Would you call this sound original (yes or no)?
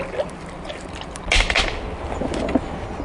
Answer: yes